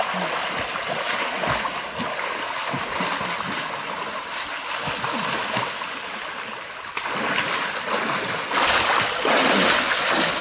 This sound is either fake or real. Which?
real